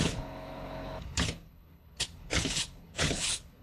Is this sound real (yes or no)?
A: no